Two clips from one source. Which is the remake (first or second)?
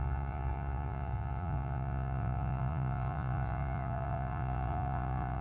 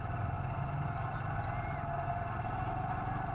first